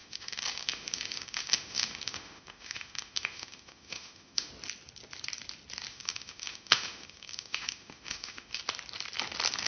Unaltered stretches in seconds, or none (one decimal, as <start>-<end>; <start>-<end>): 4.5-5.9; 8.6-9.7